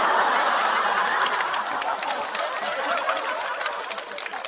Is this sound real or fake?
real